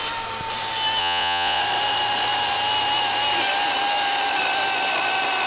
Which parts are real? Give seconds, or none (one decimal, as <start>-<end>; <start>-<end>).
0.0-1.0; 1.6-5.5